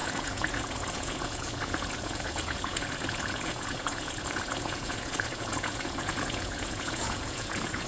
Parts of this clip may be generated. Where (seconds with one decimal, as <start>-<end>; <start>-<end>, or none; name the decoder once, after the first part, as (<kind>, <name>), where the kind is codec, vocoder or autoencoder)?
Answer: 0.0-7.9 (vocoder, Vocos)